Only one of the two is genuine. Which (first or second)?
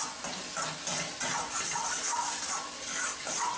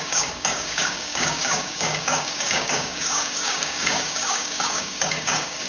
first